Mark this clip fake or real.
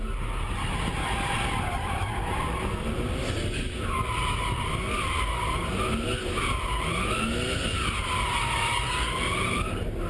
real